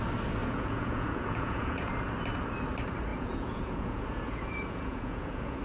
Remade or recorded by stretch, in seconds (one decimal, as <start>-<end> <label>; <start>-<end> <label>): 0.0-0.4 recorded; 0.4-1.9 remade; 1.9-3.1 recorded; 3.1-5.6 remade